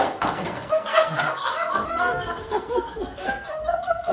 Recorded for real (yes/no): no